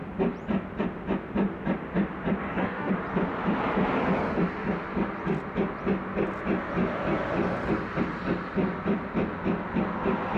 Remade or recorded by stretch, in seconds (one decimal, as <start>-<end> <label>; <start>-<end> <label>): 0.0-2.4 recorded; 2.4-2.9 remade; 2.9-10.4 recorded

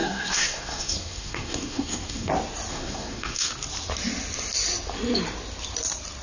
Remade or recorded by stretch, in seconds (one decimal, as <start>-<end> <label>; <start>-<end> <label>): 0.0-2.3 remade; 2.3-2.7 recorded; 2.7-3.5 remade; 3.5-6.2 recorded

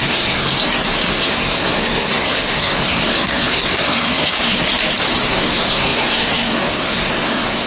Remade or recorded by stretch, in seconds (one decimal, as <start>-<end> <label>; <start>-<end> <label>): 0.0-0.5 remade; 0.5-1.1 recorded; 1.1-4.7 remade; 4.7-5.3 recorded; 5.3-7.7 remade

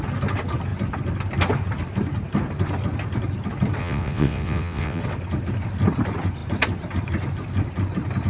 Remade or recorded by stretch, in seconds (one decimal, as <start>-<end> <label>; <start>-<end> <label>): 0.0-3.8 recorded; 3.8-5.0 remade; 5.0-8.3 recorded

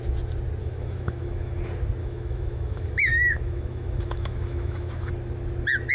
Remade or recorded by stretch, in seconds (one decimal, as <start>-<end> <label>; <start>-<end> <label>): 0.0-0.6 recorded; 0.6-1.6 remade; 1.6-2.0 recorded; 2.0-5.1 remade; 5.1-5.9 recorded

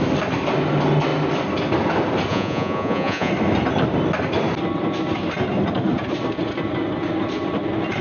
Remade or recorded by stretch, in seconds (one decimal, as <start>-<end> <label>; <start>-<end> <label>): 0.0-2.3 recorded; 2.3-3.3 remade; 3.3-8.0 recorded

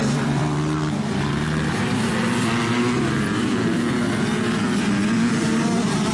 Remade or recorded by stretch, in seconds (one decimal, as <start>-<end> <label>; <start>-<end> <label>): 0.0-0.4 remade; 0.4-1.3 recorded; 1.3-2.1 remade; 2.1-5.4 recorded; 5.4-6.1 remade